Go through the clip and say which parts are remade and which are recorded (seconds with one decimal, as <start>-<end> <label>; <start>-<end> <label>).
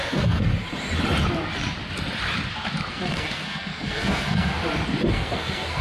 0.0-0.5 remade; 0.5-2.9 recorded; 2.9-4.6 remade; 4.6-5.1 recorded; 5.1-5.8 remade